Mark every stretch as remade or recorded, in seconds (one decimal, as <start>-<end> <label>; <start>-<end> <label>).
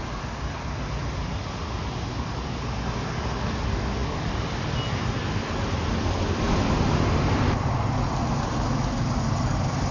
0.0-9.9 recorded